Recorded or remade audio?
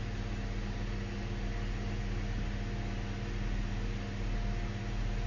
recorded